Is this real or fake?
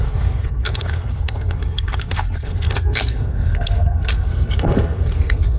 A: fake